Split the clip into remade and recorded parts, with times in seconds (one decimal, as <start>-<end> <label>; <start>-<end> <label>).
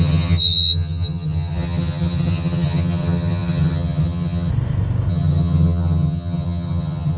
0.0-4.5 remade; 4.5-5.1 recorded; 5.1-7.2 remade